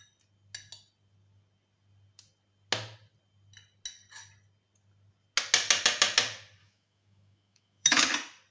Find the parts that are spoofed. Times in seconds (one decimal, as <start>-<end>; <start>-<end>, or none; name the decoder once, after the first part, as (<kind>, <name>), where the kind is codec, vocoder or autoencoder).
6.6-8.0 (autoencoder, DAC-VAE)